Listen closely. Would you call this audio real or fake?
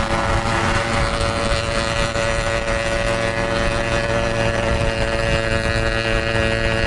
real